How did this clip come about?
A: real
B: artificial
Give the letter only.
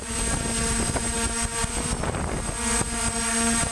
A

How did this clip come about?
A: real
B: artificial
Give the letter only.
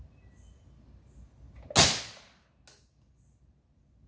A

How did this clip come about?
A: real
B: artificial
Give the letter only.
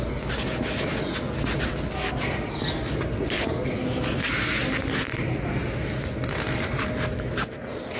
A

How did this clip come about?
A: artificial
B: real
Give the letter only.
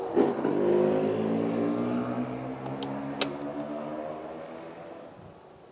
B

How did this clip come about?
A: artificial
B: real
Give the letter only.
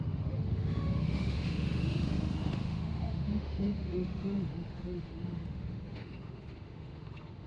A